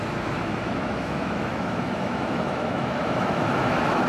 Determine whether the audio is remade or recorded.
remade